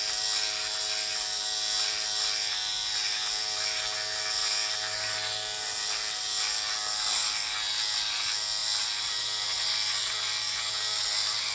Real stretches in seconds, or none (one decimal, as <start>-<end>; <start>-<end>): 0.0-11.5

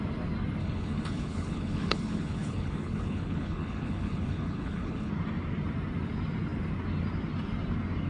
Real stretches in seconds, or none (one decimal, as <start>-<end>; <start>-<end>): 0.0-0.6; 5.1-8.1

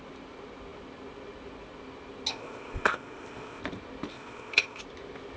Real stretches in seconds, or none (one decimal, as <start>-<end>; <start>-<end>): 0.0-2.3; 3.6-4.1; 4.8-5.4

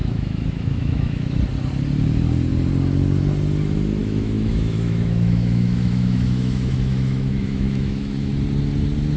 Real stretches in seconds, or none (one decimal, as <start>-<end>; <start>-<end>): 1.4-4.0; 8.3-9.2

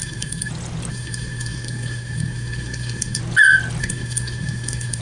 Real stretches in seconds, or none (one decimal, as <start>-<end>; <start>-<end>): 0.5-0.9; 3.2-3.8

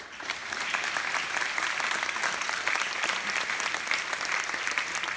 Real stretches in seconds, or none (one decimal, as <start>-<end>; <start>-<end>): 0.0-5.2

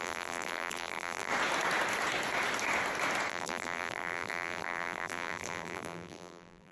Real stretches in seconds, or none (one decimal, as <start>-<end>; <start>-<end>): 1.3-3.3